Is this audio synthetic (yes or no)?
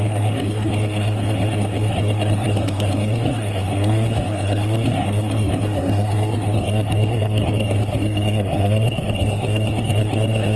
yes